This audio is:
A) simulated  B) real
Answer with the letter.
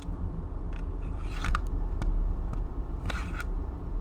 A